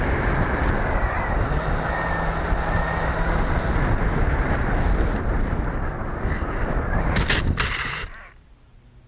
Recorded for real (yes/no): yes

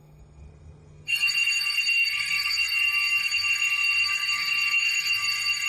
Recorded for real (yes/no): no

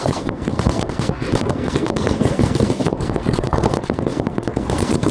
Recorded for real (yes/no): no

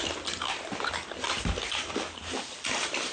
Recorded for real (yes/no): yes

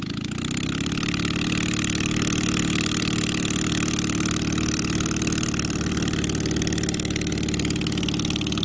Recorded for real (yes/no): yes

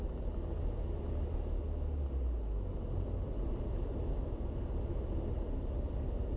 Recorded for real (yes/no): yes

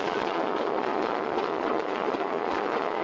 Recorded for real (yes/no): no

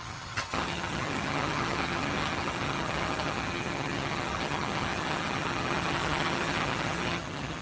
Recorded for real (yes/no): no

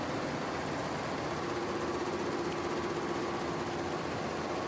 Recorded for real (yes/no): yes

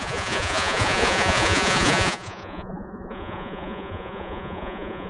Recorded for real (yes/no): no